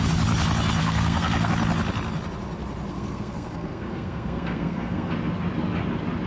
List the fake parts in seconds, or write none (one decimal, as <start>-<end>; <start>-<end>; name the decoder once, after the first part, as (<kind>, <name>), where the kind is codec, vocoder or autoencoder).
0.8-1.5 (codec, SNAC); 2.9-5.1